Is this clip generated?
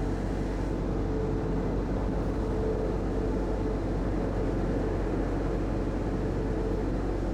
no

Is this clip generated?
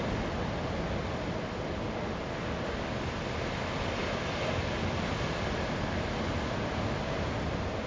no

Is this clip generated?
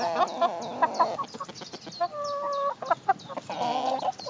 no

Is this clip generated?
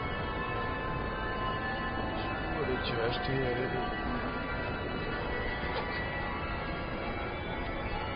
no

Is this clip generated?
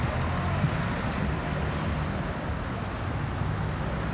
no